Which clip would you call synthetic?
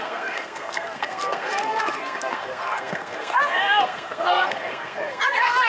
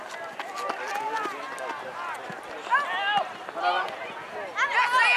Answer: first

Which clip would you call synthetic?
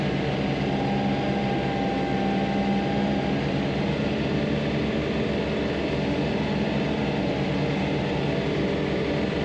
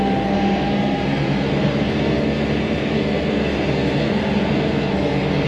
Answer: second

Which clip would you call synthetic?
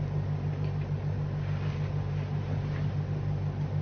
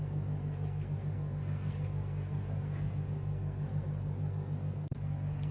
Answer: second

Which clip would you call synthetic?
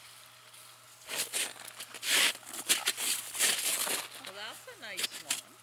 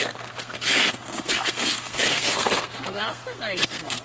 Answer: second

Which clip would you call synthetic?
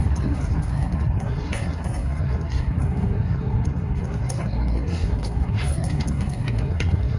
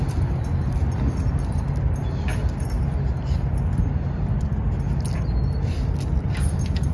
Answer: first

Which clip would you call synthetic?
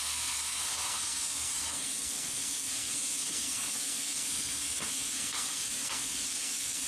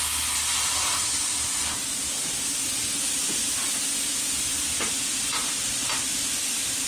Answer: first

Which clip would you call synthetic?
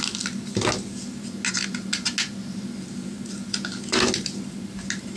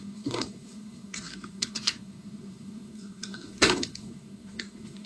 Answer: second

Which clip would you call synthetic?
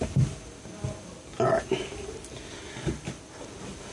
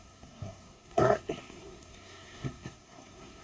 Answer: second